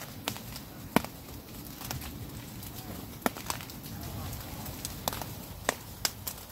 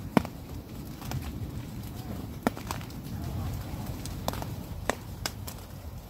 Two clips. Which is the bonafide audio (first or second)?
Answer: first